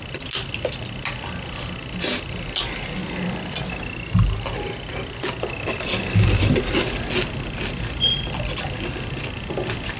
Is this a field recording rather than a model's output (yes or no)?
yes